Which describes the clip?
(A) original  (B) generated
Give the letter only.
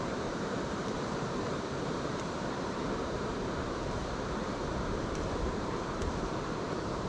B